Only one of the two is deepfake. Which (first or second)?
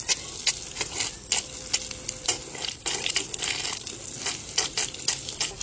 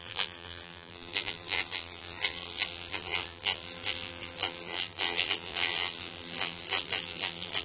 second